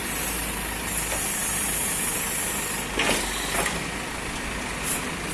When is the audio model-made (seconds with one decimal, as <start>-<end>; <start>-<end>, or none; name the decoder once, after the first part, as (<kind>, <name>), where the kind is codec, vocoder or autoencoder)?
none